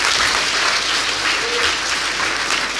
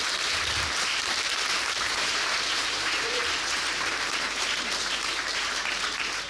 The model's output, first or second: second